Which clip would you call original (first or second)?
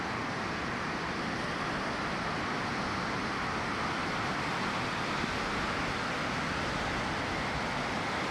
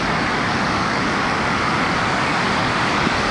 first